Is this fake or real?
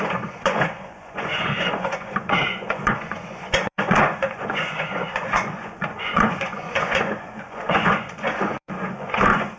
fake